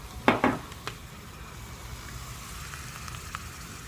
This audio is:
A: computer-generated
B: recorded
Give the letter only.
B